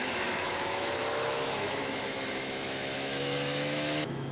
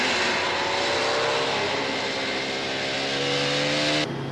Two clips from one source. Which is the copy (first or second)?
first